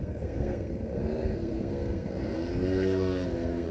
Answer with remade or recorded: remade